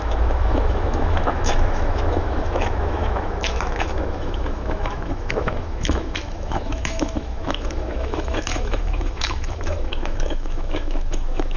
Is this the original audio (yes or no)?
no